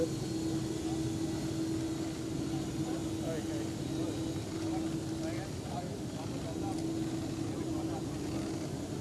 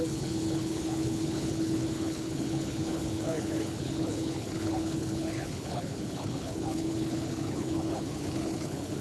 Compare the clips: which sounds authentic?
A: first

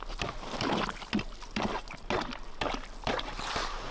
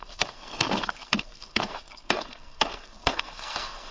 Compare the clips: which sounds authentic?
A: first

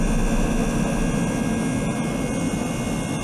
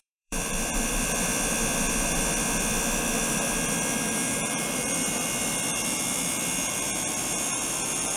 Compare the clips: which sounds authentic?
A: first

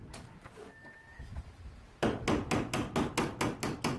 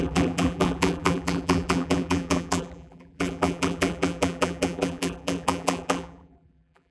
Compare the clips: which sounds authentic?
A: first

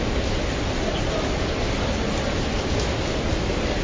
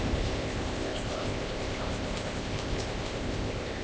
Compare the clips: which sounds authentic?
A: first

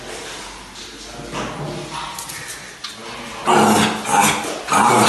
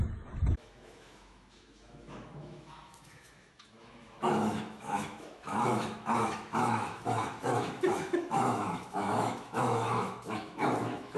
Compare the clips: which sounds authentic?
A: first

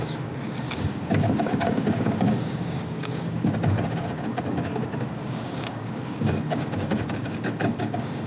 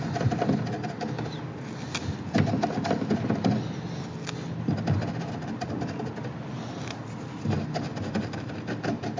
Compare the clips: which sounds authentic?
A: second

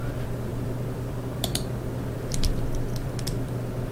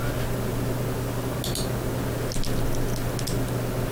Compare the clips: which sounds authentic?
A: second